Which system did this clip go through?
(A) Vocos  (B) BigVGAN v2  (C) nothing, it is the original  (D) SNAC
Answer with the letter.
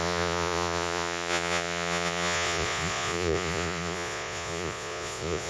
A